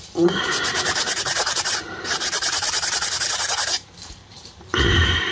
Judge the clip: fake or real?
fake